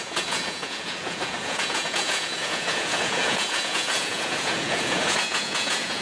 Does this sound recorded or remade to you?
remade